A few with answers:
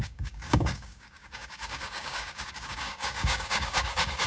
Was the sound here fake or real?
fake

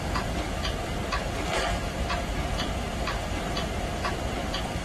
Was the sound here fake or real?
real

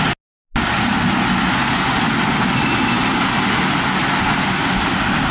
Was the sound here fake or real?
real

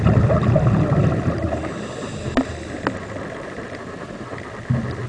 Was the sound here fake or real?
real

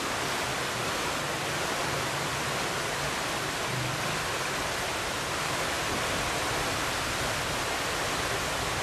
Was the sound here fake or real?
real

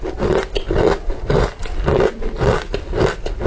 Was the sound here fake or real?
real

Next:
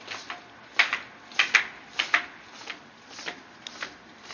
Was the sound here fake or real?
real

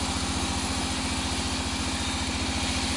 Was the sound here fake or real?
real